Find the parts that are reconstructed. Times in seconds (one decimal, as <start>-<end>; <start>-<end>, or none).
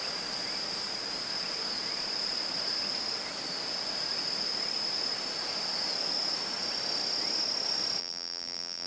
8.0-8.9